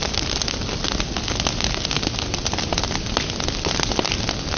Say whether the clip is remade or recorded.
recorded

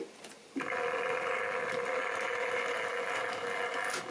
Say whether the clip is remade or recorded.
recorded